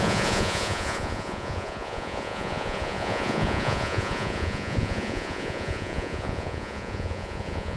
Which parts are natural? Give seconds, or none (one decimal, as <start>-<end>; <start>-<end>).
none